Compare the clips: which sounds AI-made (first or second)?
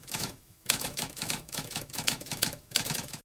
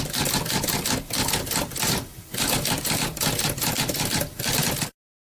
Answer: first